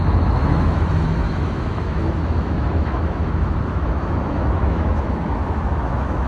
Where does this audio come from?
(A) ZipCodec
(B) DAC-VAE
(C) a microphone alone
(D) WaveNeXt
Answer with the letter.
B